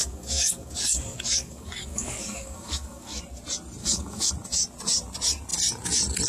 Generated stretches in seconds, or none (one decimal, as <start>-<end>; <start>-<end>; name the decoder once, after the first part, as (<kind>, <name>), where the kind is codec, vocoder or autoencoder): 0.0-3.2 (codec, DAC); 3.8-4.3